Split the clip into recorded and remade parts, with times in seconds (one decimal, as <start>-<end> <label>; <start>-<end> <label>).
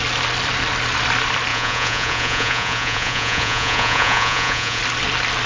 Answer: 0.0-1.5 recorded; 1.5-4.8 remade; 4.8-5.5 recorded